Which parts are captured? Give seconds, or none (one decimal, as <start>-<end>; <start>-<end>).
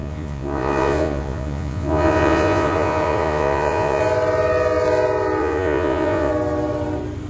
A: 4.0-5.4; 6.3-7.3